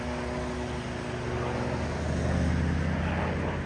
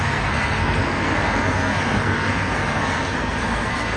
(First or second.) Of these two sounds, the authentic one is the first